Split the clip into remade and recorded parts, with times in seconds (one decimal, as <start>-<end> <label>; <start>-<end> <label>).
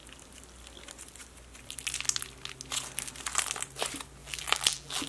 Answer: 0.0-4.2 recorded; 4.2-5.1 remade